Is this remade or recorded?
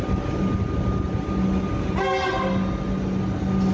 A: recorded